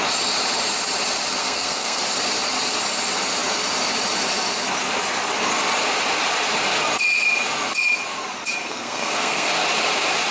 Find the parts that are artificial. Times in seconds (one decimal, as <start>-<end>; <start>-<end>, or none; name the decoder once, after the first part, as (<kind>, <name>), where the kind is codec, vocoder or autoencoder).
1.4-2.0 (codec, SNAC); 8.6-9.5